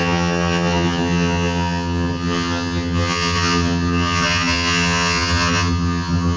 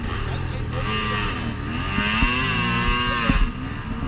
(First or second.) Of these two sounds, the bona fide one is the second